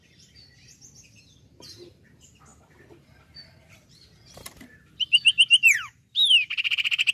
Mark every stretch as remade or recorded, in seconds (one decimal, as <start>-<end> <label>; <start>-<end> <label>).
0.0-2.5 recorded; 2.5-7.1 remade